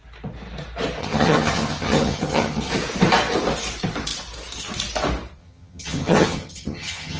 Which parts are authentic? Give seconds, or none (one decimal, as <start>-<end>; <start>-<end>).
0.0-1.0; 2.7-5.4